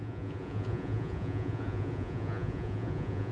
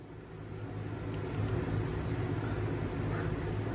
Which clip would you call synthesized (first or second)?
first